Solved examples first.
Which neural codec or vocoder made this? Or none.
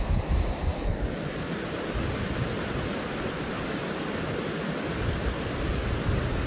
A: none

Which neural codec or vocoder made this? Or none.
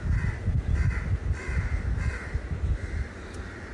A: none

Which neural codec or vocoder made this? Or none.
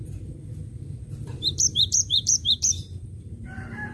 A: vocoder, BigVGAN v2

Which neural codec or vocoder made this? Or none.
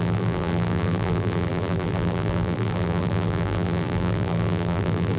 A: vocoder, BigVGAN v2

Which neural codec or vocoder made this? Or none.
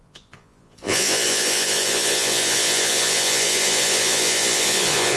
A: vocoder, Vocos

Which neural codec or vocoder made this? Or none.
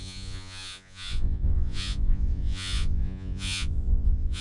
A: vocoder, Vocos